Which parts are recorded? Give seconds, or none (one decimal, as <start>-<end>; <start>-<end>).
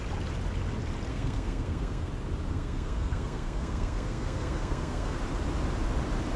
0.0-1.1; 2.1-2.5; 5.2-6.4